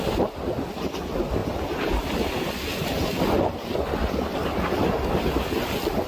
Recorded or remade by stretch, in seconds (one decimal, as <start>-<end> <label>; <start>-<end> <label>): 0.0-1.4 recorded; 1.4-2.0 remade; 2.0-6.1 recorded